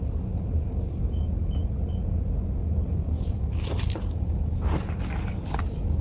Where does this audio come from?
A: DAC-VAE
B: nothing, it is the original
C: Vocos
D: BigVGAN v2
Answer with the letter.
B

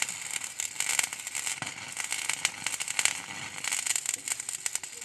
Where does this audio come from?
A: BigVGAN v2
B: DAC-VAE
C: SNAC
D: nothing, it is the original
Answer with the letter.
D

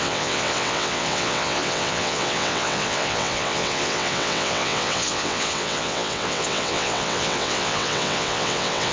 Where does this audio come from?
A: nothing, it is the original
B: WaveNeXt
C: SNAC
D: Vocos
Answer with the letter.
B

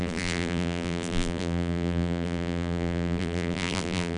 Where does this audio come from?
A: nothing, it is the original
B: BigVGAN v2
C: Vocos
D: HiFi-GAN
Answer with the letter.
B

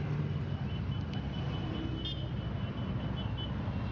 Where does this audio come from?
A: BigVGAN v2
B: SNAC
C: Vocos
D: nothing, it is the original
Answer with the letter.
D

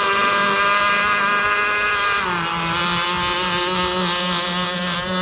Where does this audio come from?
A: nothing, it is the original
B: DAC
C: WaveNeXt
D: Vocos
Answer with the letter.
A